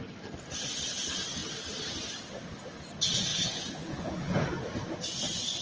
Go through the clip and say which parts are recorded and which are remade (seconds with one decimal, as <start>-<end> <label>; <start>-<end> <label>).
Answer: 0.0-3.3 recorded; 3.3-4.5 remade; 4.5-5.6 recorded